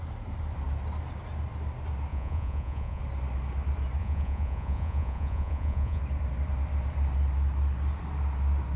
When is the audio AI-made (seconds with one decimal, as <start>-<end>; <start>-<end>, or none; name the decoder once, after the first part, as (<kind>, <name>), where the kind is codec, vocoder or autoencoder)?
2.1-3.0 (vocoder, Vocos); 4.0-6.0